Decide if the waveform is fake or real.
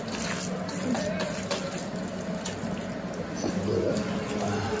real